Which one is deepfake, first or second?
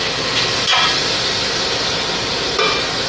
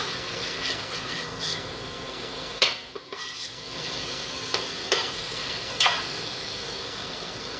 second